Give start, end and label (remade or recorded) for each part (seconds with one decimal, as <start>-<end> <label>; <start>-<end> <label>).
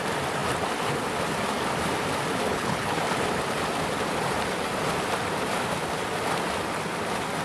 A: 0.0-2.5 recorded; 2.5-3.0 remade; 3.0-7.4 recorded